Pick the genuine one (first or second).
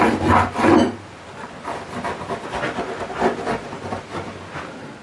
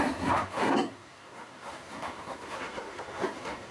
first